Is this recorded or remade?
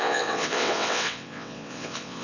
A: remade